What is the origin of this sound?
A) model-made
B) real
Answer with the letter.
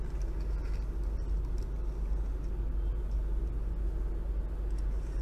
B